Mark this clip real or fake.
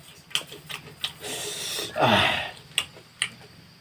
real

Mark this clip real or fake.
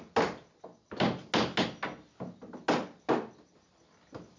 real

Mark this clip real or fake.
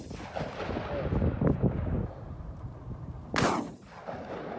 real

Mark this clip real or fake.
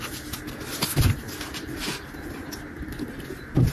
real